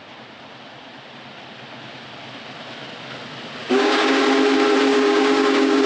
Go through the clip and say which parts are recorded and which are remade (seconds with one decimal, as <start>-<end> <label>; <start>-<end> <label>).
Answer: 0.0-3.6 recorded; 3.6-4.2 remade; 4.2-4.9 recorded; 4.9-5.9 remade